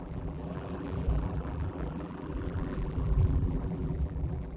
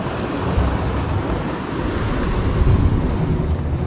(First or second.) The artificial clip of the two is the first